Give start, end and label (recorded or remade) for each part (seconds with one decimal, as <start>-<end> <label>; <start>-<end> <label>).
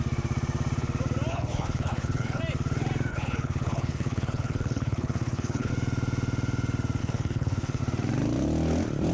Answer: 0.0-1.3 recorded; 1.3-2.4 remade; 2.4-3.1 recorded; 3.1-5.7 remade; 5.7-7.0 recorded; 7.0-7.8 remade; 7.8-9.1 recorded